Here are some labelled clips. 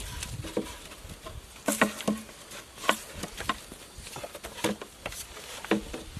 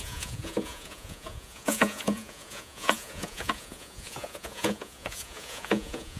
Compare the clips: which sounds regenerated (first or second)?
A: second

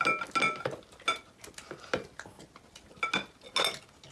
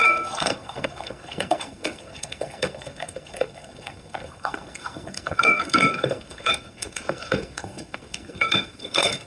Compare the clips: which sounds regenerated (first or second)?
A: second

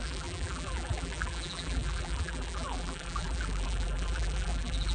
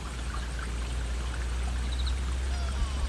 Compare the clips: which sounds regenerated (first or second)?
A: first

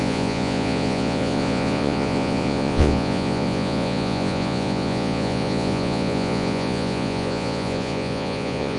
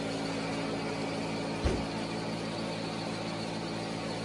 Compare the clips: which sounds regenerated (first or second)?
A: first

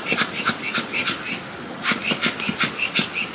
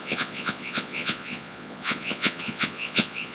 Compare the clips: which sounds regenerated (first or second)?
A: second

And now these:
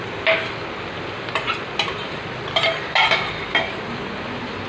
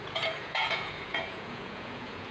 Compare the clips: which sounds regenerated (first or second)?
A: second